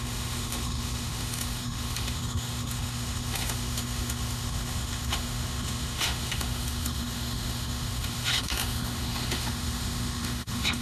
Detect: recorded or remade remade